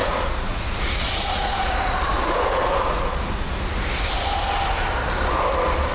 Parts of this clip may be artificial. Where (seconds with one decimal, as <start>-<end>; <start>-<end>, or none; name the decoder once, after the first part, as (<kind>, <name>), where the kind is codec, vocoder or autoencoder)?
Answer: 0.0-3.5 (vocoder, Vocos)